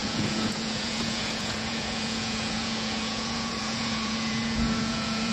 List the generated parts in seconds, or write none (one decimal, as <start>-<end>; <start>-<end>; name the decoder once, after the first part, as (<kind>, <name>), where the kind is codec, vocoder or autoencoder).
0.0-5.3 (vocoder, Vocos)

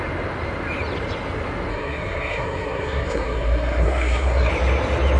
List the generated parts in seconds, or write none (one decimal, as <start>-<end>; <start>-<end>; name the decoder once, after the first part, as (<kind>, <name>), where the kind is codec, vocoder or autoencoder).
1.7-4.5 (codec, SNAC)

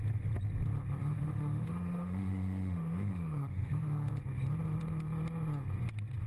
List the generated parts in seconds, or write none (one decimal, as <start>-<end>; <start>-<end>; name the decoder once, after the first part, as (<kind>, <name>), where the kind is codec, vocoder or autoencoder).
1.0-4.1 (autoencoder, DAC-VAE)

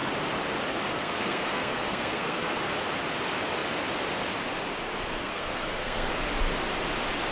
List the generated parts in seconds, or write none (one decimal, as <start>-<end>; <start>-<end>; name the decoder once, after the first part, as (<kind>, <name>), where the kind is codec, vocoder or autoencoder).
0.9-2.6 (codec, SNAC); 5.1-6.1

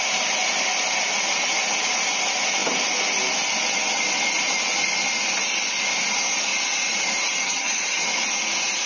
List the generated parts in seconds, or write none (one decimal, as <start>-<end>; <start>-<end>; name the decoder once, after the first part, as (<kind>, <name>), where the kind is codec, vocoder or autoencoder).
7.4-8.1 (vocoder, HiFi-GAN)

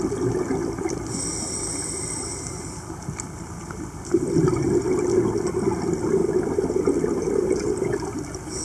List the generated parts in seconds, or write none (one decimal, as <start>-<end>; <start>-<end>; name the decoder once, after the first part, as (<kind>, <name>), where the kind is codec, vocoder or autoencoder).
none